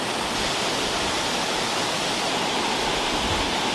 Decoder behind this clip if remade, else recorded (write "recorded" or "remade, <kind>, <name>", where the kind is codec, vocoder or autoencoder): recorded